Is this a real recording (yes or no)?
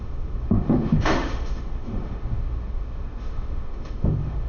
no